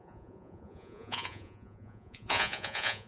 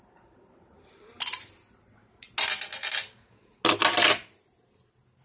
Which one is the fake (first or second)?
first